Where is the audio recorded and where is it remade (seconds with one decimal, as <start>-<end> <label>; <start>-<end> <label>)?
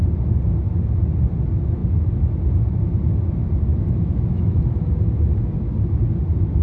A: 0.0-3.7 recorded; 3.7-4.6 remade; 4.6-6.6 recorded